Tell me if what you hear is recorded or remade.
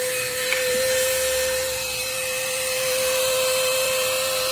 remade